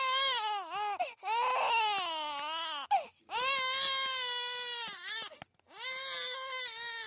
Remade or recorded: recorded